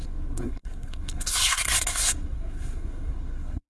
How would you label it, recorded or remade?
remade